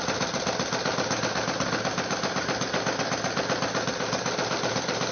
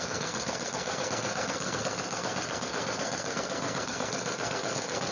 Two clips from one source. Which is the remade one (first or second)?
second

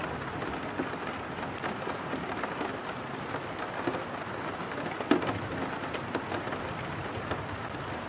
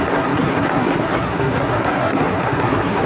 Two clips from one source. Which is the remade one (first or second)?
second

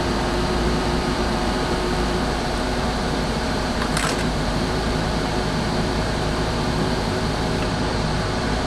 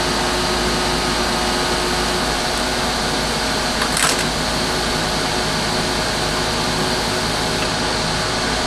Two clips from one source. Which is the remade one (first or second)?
first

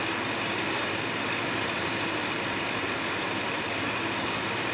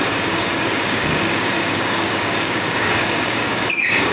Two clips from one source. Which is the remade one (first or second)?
second